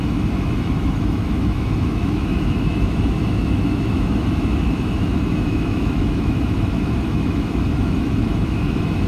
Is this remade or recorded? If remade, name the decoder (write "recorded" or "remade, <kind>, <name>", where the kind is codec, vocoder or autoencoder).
remade, autoencoder, DAC-VAE